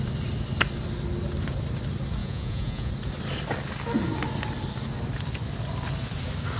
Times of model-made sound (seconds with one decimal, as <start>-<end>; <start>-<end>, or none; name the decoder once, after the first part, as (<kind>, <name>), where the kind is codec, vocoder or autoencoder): 2.2-2.9 (vocoder, Vocos)